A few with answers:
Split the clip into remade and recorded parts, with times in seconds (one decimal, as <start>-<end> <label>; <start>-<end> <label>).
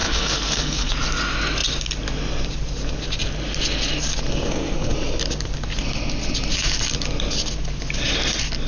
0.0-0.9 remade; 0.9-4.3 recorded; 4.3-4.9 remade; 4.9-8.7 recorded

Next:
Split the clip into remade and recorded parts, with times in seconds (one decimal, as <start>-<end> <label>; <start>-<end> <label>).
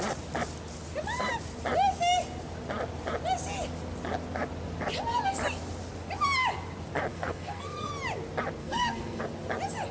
0.0-7.1 recorded; 7.1-7.9 remade; 7.9-8.6 recorded; 8.6-9.2 remade; 9.2-9.9 recorded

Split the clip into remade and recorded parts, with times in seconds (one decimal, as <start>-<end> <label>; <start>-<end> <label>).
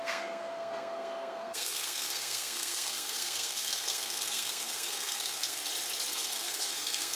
0.0-5.6 remade; 5.6-6.1 recorded; 6.1-7.1 remade